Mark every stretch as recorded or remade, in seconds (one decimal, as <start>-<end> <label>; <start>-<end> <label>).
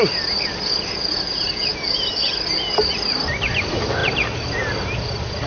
0.0-5.5 recorded